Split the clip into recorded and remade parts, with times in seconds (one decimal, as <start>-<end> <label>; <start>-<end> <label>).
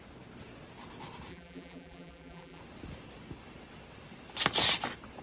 0.0-1.3 recorded; 1.3-2.6 remade; 2.6-5.2 recorded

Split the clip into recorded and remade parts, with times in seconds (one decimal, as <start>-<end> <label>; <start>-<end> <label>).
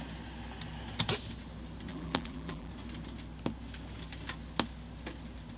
0.0-1.9 recorded; 1.9-2.7 remade; 2.7-5.6 recorded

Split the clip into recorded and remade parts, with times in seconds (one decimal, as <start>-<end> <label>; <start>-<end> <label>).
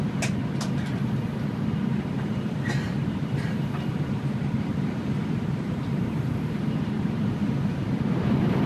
0.0-1.9 recorded; 1.9-6.3 remade; 6.3-8.7 recorded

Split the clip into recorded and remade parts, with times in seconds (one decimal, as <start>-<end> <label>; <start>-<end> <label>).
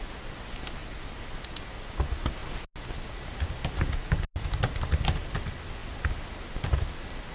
0.0-0.8 recorded; 0.8-1.9 remade; 1.9-7.3 recorded